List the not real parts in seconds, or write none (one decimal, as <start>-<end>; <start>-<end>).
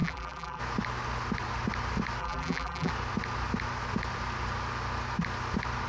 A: 0.0-0.6; 2.2-2.9